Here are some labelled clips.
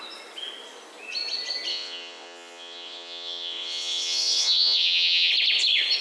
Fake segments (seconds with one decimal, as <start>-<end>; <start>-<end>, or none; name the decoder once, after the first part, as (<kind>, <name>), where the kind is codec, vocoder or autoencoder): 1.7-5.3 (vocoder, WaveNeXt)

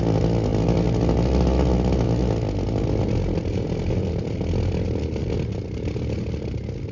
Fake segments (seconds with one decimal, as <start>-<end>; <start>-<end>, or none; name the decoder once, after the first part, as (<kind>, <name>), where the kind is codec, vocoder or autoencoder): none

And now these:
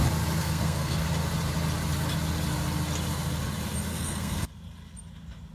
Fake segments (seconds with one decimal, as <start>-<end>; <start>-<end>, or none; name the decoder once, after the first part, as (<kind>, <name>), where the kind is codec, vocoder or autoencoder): 0.4-1.0 (codec, SNAC); 3.9-4.5